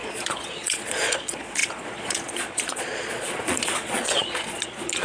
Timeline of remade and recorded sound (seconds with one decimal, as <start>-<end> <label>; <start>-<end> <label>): 0.0-5.0 remade